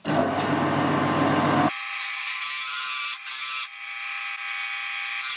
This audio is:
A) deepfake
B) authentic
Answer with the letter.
B